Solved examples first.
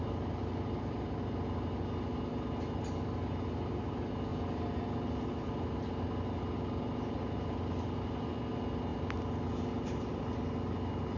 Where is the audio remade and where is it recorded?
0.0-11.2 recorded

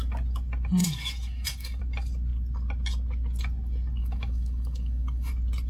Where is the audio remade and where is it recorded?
0.0-0.8 recorded; 0.8-1.8 remade; 1.8-4.0 recorded; 4.0-5.3 remade; 5.3-5.7 recorded

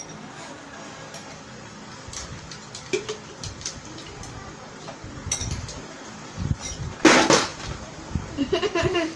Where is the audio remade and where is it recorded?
0.0-1.2 recorded; 1.2-4.7 remade; 4.7-5.4 recorded; 5.4-6.5 remade; 6.5-7.5 recorded; 7.5-8.4 remade; 8.4-9.2 recorded

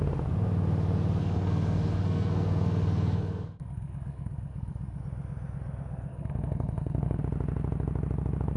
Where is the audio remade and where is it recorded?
0.0-1.2 recorded; 1.2-5.0 remade; 5.0-6.1 recorded; 6.1-7.2 remade; 7.2-8.6 recorded

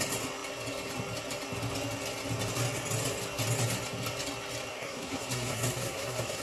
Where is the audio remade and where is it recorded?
0.0-4.7 recorded; 4.7-6.4 remade

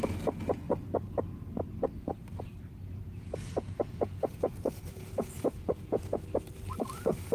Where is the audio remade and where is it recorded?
0.0-2.8 recorded; 2.8-6.2 remade; 6.2-7.3 recorded